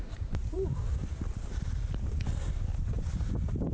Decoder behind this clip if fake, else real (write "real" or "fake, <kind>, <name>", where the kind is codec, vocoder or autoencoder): real